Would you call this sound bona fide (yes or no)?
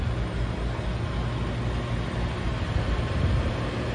yes